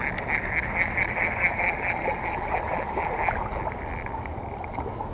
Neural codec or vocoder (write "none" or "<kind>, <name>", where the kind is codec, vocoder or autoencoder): none